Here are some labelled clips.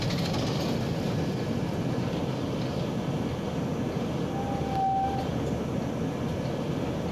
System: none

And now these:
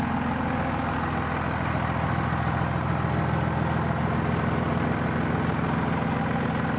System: none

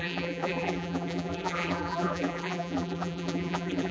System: vocoder, BigVGAN v2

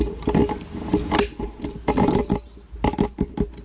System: none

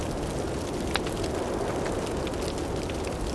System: none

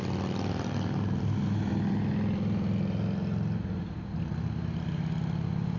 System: none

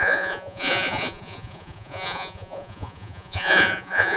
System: vocoder, Vocos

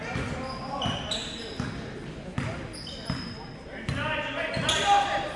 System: none